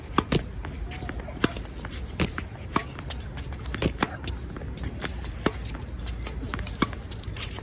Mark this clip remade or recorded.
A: recorded